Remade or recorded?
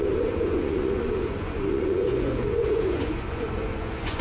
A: remade